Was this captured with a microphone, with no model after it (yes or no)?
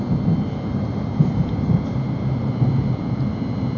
no